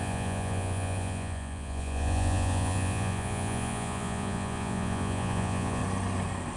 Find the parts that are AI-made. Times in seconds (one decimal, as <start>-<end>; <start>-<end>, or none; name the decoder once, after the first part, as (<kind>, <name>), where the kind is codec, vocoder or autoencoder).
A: 0.0-5.8 (vocoder, Vocos)

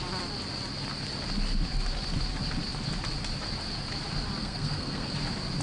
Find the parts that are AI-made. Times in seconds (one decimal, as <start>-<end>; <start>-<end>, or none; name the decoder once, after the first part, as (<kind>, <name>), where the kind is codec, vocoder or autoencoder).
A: 4.4-5.1 (codec, SNAC)

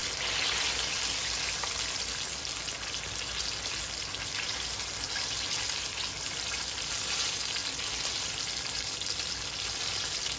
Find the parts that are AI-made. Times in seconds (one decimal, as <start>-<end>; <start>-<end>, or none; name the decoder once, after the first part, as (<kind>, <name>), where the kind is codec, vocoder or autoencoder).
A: none